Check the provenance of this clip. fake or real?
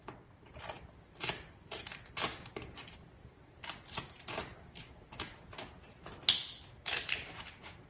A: real